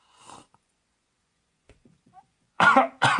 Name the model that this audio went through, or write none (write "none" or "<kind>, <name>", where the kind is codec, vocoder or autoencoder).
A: vocoder, Vocos